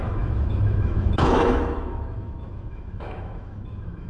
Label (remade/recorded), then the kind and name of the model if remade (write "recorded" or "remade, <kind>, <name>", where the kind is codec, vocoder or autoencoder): remade, autoencoder, DAC-VAE